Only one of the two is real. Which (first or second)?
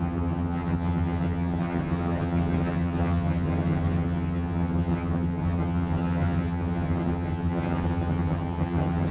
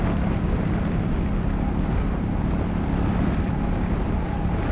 second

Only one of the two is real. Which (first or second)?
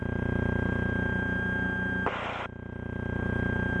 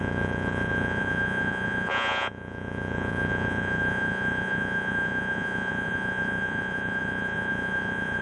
first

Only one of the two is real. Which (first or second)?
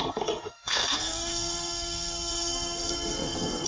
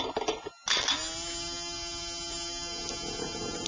second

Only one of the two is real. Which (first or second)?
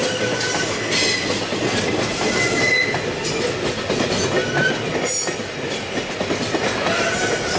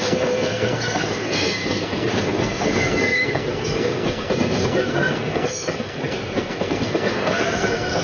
first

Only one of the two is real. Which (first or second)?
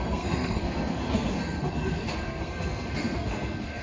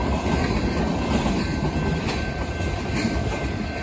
second